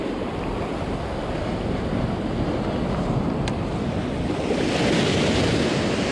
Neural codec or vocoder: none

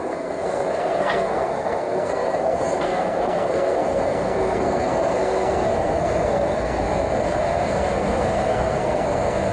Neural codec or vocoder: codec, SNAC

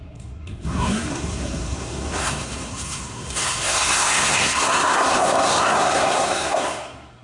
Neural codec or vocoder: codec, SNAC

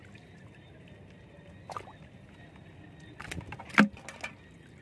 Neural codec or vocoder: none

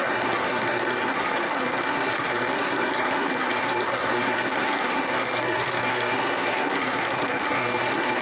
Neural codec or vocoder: codec, SNAC